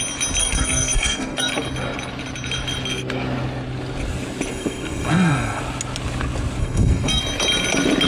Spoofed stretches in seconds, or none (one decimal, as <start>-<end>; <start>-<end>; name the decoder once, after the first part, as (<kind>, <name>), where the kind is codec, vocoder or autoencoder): 0.4-1.5 (codec, SNAC); 4.5-5.6; 6.6-7.2